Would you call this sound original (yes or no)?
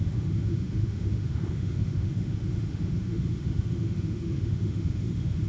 no